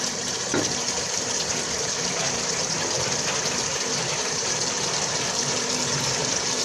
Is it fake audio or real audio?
fake